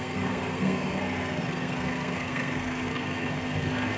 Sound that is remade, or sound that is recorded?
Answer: remade